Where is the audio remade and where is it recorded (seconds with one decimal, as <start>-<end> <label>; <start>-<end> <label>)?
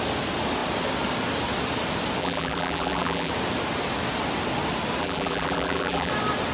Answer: 0.0-2.2 recorded; 2.2-3.3 remade; 3.3-5.0 recorded; 5.0-6.1 remade; 6.1-6.5 recorded